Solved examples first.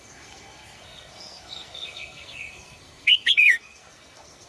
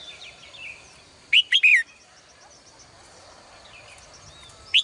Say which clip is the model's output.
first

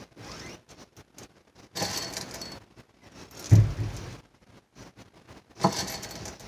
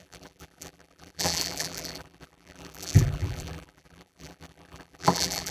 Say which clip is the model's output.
second